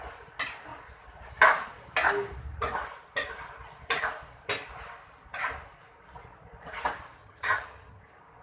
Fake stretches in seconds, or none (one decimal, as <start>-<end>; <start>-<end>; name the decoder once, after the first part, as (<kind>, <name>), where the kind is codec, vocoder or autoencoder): 7.2-8.0 (vocoder, HiFi-GAN)